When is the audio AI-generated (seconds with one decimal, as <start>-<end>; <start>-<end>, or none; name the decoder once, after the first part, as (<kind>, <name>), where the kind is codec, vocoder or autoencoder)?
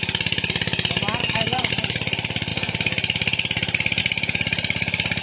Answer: 1.2-1.7 (codec, DAC)